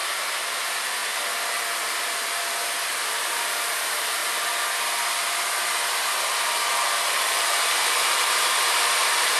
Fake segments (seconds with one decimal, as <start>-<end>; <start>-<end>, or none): 0.5-1.0; 1.8-4.2; 6.7-9.4